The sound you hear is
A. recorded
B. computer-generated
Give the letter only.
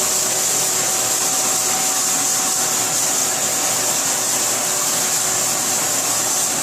A